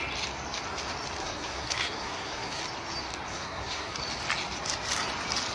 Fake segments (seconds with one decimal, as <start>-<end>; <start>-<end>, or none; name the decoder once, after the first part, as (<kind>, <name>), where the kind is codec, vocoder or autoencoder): 1.2-2.6 (codec, SNAC); 3.3-4.0